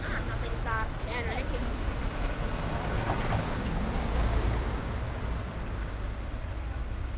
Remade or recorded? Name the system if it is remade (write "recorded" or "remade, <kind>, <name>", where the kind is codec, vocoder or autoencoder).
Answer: recorded